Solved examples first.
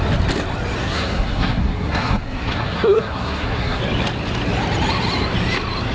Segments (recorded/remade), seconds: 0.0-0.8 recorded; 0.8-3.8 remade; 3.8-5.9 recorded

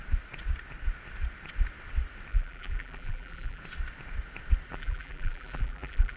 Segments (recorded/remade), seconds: 0.0-2.3 recorded; 2.3-3.6 remade; 3.6-4.7 recorded; 4.7-6.2 remade

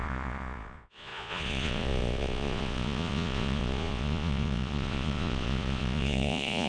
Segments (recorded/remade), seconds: 0.0-6.7 remade

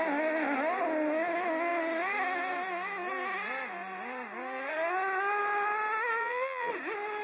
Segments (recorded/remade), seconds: 0.0-6.2 recorded; 6.2-6.7 remade; 6.7-7.2 recorded

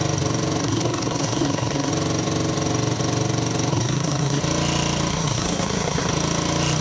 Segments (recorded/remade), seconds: 0.0-0.6 recorded; 0.6-1.9 remade; 1.9-3.7 recorded; 3.7-4.4 remade; 4.4-5.1 recorded; 5.1-6.1 remade; 6.1-6.8 recorded